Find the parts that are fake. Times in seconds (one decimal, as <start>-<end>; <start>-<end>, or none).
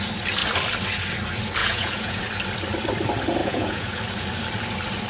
1.6-2.2; 3.4-4.0